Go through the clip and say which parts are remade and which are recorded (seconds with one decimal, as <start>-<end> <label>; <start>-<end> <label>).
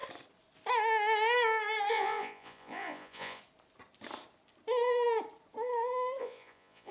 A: 0.0-1.9 recorded; 1.9-3.4 remade; 3.4-6.2 recorded; 6.2-6.9 remade